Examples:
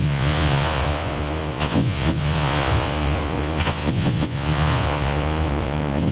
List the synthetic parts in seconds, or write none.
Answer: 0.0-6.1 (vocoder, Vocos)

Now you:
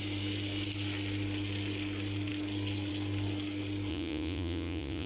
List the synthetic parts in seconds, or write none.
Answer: 3.9-5.1 (vocoder, Vocos)